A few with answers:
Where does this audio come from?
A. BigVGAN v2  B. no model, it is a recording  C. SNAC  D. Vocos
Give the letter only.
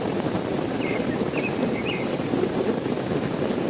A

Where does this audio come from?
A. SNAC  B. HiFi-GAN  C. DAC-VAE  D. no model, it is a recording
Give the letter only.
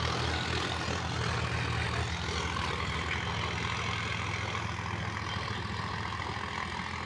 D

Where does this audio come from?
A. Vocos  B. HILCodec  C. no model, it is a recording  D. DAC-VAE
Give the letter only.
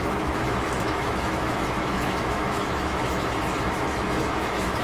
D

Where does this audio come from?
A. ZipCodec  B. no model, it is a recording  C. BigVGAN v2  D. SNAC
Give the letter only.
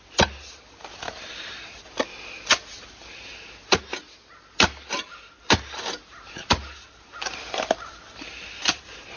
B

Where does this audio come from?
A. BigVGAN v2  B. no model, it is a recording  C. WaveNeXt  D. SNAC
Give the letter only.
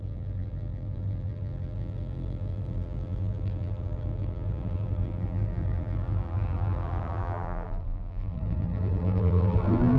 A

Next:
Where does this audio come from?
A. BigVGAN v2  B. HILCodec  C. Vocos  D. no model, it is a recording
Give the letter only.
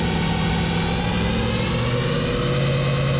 D